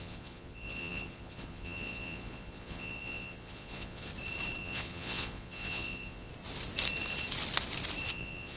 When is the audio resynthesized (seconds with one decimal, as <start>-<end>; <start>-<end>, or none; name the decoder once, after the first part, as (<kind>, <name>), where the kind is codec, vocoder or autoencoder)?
0.0-4.1 (vocoder, Vocos); 4.6-6.3; 8.1-8.6